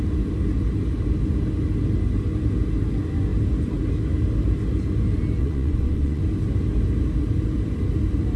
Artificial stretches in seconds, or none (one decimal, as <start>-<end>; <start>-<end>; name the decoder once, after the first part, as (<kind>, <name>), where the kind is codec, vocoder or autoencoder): 5.4-6.2 (vocoder, Vocos)